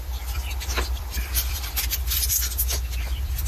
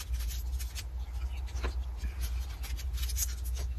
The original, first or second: second